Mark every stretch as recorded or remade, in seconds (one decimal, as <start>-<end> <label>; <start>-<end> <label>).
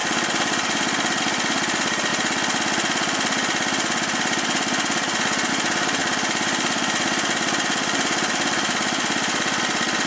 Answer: 0.0-2.1 remade; 2.1-5.5 recorded; 5.5-10.1 remade